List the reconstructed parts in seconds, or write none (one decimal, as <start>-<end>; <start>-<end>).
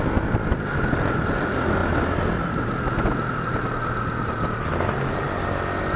none